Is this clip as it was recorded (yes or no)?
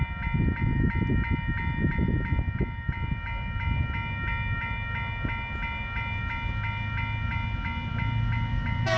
yes